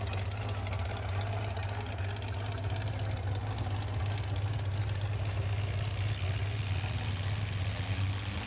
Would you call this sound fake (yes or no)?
no